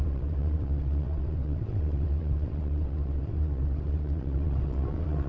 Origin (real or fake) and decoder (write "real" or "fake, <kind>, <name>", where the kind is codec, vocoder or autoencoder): fake, vocoder, WaveNeXt